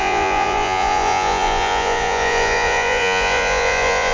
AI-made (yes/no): yes